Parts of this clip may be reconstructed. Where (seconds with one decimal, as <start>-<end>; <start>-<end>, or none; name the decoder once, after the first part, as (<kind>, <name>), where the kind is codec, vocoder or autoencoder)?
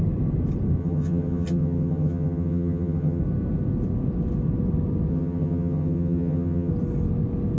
0.8-3.2 (vocoder, HiFi-GAN); 5.1-6.7